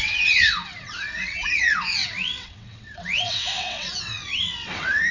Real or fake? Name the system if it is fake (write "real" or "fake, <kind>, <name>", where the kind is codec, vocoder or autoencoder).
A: fake, vocoder, WaveNeXt